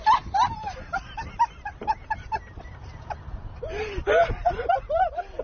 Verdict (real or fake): fake